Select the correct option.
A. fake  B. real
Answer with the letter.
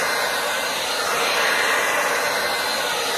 B